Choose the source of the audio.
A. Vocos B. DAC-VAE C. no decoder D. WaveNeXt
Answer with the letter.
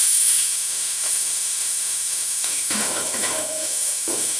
B